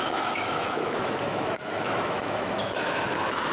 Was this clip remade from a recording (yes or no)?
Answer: yes